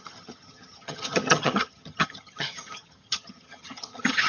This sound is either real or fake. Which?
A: fake